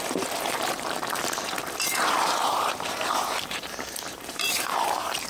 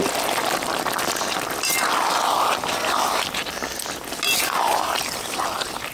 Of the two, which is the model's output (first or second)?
first